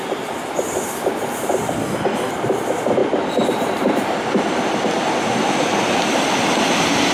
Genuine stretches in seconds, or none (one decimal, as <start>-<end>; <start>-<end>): 0.0-1.8; 2.3-7.1